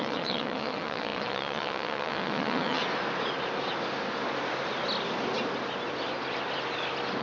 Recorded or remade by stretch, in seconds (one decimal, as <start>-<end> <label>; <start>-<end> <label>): 0.0-2.8 remade; 2.8-7.2 recorded